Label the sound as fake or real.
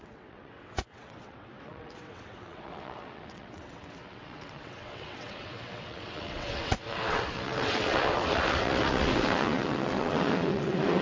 fake